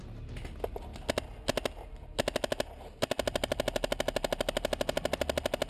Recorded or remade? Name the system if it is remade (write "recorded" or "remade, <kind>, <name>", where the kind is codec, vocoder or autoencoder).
recorded